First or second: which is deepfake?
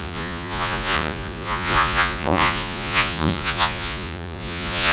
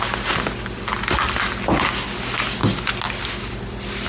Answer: first